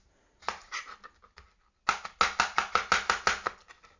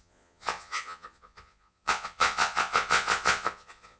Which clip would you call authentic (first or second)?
first